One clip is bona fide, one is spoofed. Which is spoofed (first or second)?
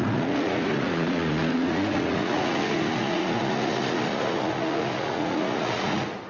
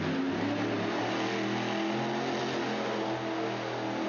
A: first